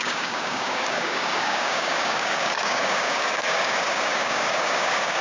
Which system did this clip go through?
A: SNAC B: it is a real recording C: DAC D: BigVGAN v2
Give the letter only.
C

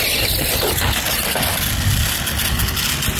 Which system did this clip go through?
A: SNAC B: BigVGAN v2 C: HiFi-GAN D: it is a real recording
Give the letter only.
D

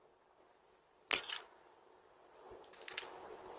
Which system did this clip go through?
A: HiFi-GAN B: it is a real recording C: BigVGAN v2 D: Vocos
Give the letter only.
B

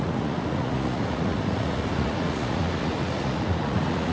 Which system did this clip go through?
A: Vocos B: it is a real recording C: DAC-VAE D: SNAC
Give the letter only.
A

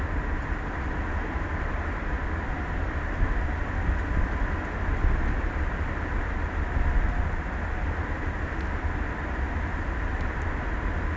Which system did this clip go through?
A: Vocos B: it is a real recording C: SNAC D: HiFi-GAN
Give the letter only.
B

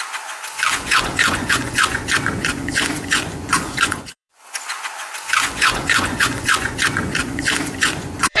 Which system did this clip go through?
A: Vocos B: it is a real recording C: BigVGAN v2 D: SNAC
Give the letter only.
A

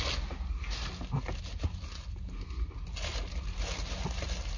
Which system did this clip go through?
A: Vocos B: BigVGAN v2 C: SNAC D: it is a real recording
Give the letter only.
D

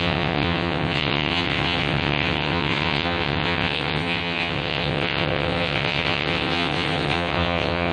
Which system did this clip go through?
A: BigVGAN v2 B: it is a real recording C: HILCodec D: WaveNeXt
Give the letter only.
D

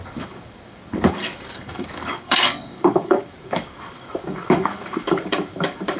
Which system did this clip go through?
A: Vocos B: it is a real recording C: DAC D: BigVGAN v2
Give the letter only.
C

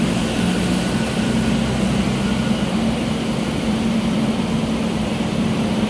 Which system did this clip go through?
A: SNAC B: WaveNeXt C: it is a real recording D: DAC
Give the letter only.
C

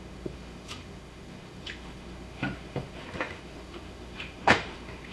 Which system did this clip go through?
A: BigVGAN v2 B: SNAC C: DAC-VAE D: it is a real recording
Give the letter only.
C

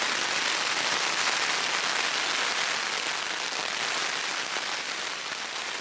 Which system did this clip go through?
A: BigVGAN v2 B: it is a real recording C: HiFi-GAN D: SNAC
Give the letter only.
B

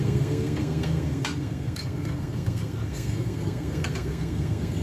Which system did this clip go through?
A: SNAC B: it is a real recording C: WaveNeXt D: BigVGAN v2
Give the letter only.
A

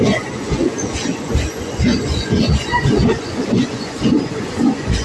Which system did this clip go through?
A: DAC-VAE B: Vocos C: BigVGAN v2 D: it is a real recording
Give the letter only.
B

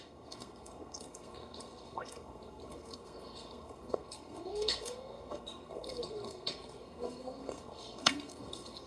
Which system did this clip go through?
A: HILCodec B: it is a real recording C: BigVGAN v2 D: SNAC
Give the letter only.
D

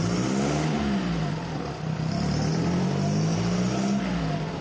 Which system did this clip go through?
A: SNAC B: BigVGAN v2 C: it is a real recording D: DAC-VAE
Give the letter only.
C